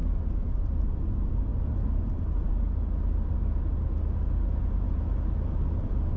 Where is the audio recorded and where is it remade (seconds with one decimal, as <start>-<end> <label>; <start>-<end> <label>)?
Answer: 0.0-6.2 recorded